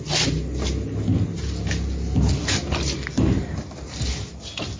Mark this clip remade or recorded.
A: recorded